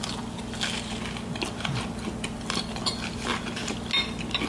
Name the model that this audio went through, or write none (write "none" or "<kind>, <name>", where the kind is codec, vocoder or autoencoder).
none